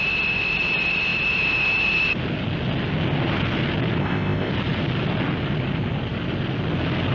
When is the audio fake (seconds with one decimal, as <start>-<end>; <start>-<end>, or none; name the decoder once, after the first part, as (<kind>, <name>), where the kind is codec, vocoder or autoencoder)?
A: 4.0-4.5 (codec, ZipCodec)